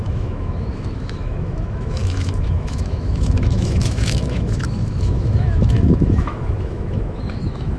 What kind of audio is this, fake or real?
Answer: fake